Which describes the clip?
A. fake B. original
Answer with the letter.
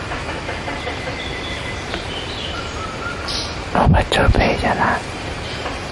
A